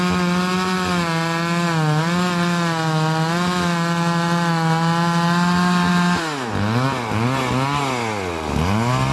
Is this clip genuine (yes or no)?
yes